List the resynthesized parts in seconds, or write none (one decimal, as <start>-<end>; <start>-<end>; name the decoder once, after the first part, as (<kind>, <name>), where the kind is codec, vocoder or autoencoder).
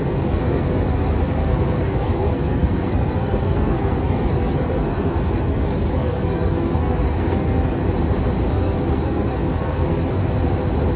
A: 0.0-7.8 (codec, SNAC); 8.5-10.2